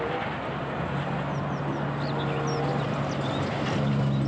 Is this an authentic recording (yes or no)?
yes